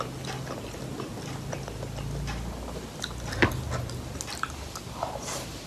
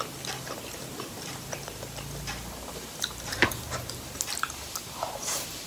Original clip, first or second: first